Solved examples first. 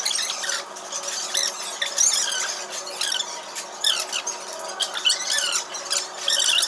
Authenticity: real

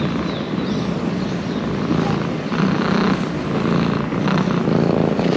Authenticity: real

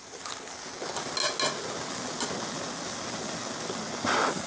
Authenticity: real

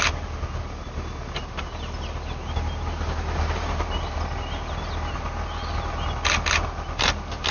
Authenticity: real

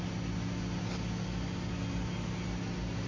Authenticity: real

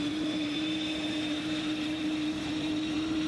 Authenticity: fake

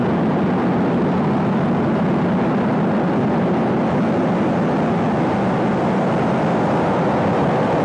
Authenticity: real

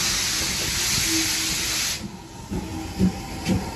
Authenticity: real